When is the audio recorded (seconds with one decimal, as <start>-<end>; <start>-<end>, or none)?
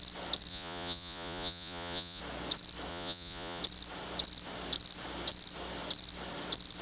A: 0.0-0.5; 2.2-2.9; 3.6-6.8